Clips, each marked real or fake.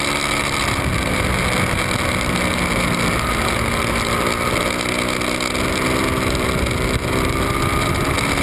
real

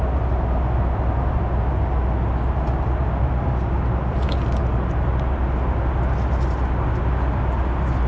real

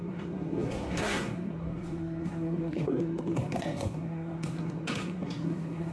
fake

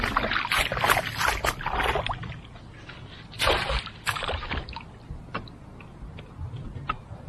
real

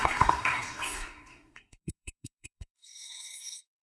fake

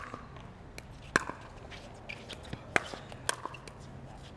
real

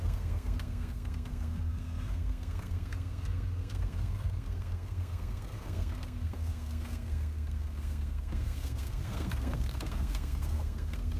fake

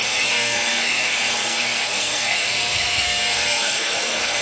fake